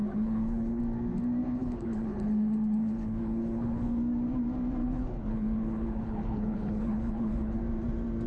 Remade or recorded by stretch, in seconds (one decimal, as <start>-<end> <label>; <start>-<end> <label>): 0.0-0.8 remade; 0.8-1.4 recorded; 1.4-4.0 remade; 4.0-4.8 recorded; 4.8-7.6 remade; 7.6-8.3 recorded